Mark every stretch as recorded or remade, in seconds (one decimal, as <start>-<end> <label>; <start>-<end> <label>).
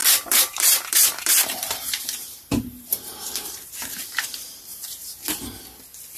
0.0-3.7 remade; 3.7-4.7 recorded; 4.7-5.6 remade; 5.6-6.2 recorded